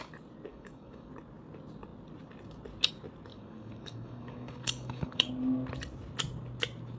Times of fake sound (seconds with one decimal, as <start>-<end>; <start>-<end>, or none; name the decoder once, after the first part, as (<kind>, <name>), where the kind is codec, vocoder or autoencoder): 0.5-1.1 (codec, DAC); 3.3-5.3